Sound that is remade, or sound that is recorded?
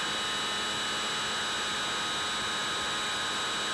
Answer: recorded